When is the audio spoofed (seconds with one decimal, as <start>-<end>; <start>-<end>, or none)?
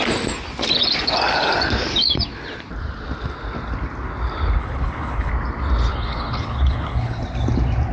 4.6-5.3; 5.9-7.2